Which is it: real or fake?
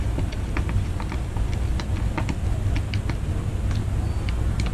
real